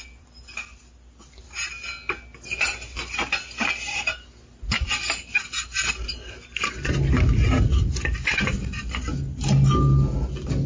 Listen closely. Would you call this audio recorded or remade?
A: recorded